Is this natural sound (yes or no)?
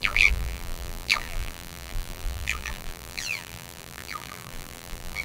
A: no